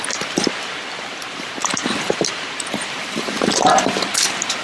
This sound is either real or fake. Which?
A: fake